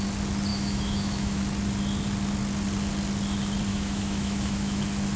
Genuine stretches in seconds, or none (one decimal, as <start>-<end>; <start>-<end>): 0.0-0.5; 1.4-3.7; 4.8-5.2